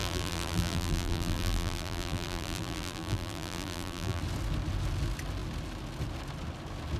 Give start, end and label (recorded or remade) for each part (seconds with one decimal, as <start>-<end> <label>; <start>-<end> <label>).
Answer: 0.0-4.2 remade; 4.2-7.0 recorded